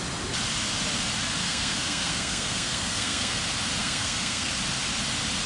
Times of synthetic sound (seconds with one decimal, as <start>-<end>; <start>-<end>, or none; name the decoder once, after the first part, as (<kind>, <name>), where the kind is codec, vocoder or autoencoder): 1.4-3.4 (codec, SNAC); 3.8-4.5

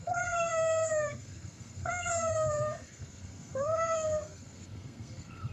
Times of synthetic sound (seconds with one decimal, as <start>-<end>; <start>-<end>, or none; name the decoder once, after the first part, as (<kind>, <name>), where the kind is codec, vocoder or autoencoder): 0.0-5.5 (codec, SNAC)

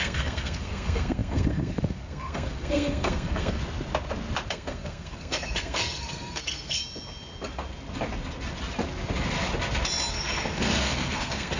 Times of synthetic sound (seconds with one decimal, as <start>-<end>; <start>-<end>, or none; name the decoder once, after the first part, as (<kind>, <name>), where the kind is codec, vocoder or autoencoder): 0.0-3.6 (codec, SNAC); 4.5-6.8; 10.1-11.6